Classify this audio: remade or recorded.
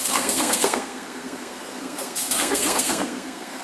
remade